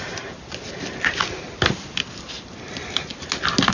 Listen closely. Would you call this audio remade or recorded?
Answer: recorded